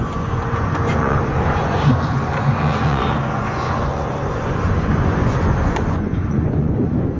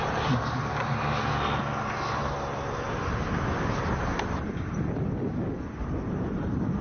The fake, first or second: first